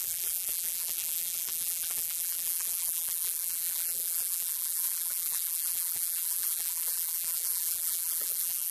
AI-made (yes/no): yes